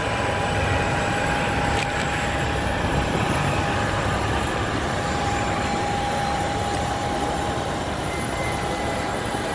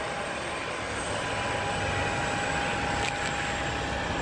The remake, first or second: first